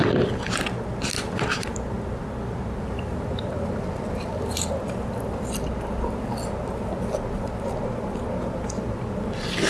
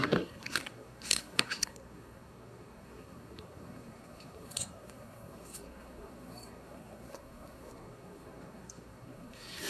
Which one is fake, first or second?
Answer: second